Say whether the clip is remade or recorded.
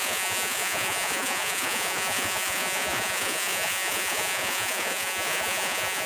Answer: remade